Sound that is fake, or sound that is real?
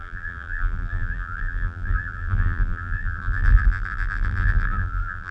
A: fake